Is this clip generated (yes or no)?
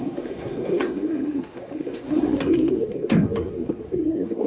yes